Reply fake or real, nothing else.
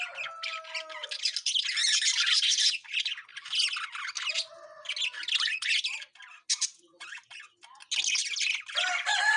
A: real